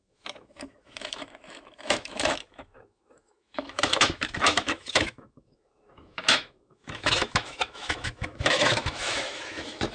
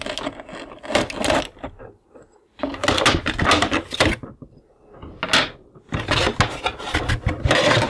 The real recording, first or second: second